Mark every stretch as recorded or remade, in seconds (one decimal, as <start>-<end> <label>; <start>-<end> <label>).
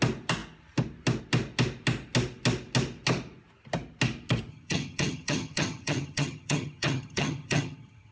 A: 0.0-4.5 recorded; 4.5-8.1 remade